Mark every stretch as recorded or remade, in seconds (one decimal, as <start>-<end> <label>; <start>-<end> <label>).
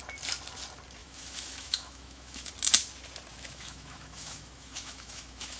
0.0-1.0 recorded; 1.0-2.5 remade; 2.5-3.3 recorded; 3.3-5.6 remade